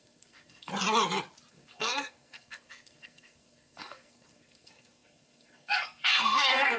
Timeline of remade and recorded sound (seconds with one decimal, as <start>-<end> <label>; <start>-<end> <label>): 0.0-0.7 remade; 0.7-1.5 recorded; 1.5-6.8 remade